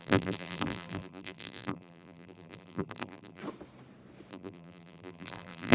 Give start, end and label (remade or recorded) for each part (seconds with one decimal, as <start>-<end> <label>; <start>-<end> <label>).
0.0-3.4 remade; 3.4-4.3 recorded; 4.3-5.7 remade